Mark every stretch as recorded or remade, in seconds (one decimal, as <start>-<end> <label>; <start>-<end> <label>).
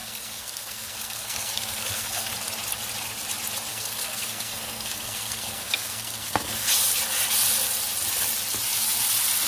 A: 0.0-2.3 remade; 2.3-3.7 recorded; 3.7-6.7 remade; 6.7-9.5 recorded